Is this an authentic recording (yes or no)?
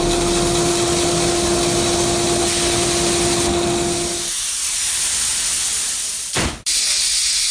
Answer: yes